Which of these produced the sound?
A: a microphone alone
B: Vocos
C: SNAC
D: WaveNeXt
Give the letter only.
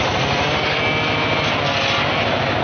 A